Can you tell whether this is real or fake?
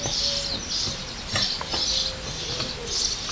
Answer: real